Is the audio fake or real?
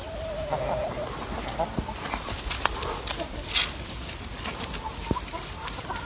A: real